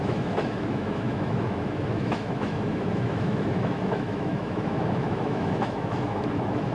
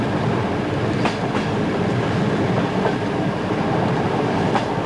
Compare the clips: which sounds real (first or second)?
second